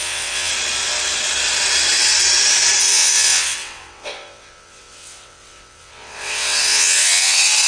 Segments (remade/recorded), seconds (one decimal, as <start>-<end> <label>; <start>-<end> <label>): 0.0-0.5 remade; 0.5-2.8 recorded; 2.8-7.7 remade